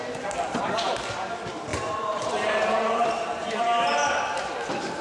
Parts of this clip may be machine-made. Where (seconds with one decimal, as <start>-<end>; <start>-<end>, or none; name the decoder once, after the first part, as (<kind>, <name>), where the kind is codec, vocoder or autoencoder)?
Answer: 1.7-3.6 (vocoder, BigVGAN v2)